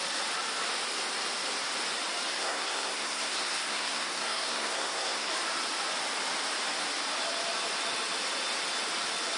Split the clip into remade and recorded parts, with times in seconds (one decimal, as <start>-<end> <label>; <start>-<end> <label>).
0.0-2.3 recorded; 2.3-5.3 remade; 5.3-9.4 recorded